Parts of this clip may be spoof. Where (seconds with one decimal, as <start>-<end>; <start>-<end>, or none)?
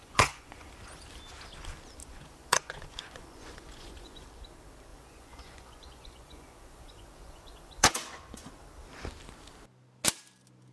0.0-0.7; 2.0-4.3; 4.9-8.5